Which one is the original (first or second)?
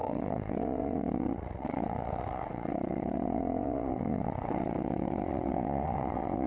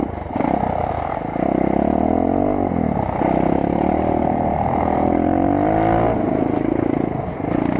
second